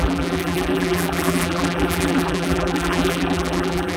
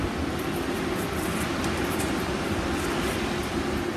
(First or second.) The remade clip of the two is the first